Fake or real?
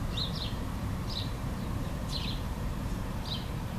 fake